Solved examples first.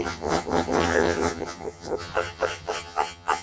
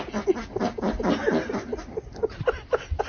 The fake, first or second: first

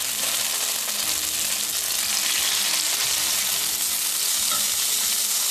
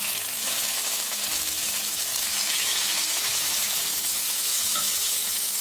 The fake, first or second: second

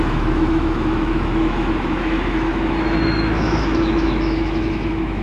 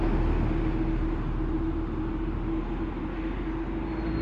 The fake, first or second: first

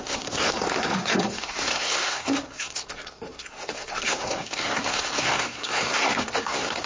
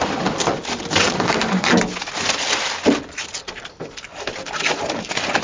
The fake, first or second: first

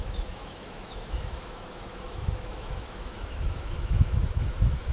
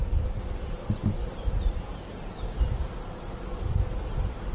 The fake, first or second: first